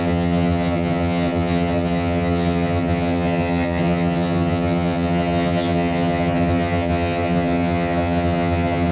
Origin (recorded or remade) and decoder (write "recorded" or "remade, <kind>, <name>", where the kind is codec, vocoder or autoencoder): remade, vocoder, HiFi-GAN